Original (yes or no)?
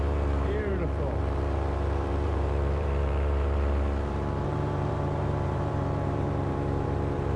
no